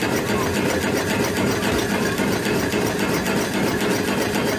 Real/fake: real